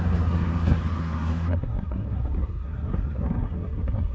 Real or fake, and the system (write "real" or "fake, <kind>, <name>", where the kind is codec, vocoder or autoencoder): fake, codec, SNAC